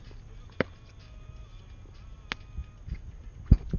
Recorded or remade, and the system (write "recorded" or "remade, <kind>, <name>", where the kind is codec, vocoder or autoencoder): recorded